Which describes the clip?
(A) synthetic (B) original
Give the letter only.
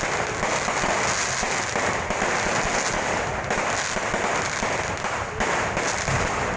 B